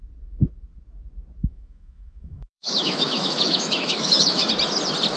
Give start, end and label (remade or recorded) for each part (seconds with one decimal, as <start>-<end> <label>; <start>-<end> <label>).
0.0-1.4 recorded; 1.4-4.5 remade; 4.5-5.2 recorded